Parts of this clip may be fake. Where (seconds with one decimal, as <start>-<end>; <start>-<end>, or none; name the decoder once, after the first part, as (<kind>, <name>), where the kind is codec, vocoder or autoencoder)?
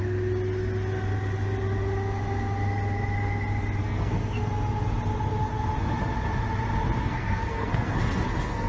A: 3.8-4.5 (codec, SNAC); 7.0-8.7